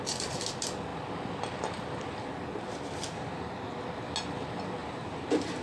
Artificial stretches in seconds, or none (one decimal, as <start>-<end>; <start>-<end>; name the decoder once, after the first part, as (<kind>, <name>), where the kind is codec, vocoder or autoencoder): 4.8-5.6 (vocoder, BigVGAN v2)